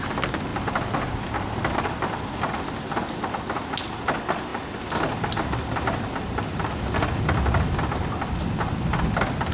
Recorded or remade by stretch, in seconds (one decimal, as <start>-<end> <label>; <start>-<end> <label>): 0.0-9.5 recorded